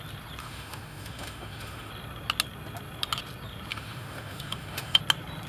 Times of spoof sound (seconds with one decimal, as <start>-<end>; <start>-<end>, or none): 0.4-1.9; 3.7-5.0